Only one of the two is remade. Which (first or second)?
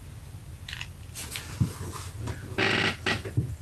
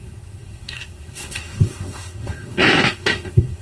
second